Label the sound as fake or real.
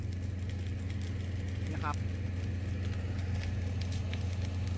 real